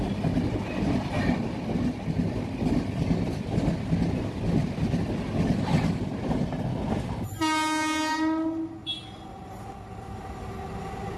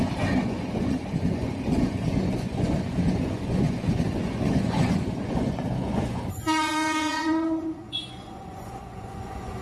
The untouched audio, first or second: first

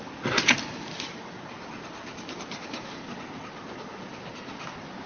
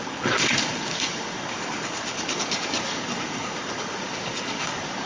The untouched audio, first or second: first